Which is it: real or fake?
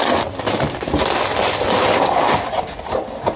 real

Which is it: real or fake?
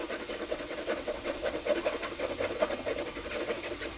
fake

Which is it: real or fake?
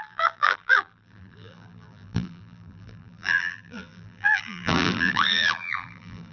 fake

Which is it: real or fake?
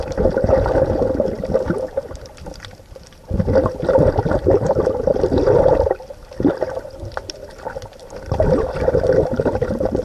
fake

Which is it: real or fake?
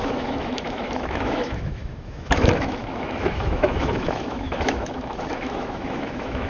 fake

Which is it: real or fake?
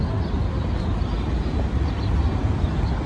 real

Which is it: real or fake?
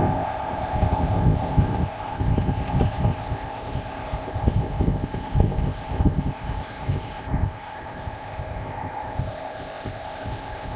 fake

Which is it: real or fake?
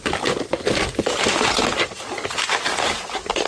real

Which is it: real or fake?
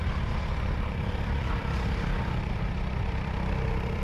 fake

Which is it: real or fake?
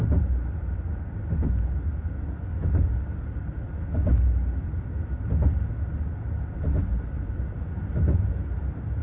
real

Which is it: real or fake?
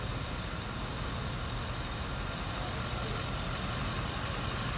real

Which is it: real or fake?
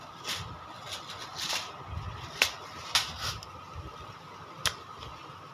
real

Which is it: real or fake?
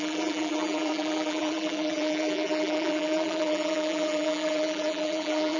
fake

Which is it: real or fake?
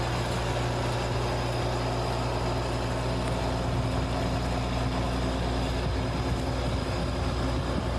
real